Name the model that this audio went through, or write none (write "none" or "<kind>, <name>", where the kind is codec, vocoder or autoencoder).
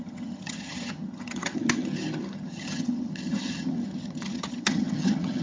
vocoder, HiFi-GAN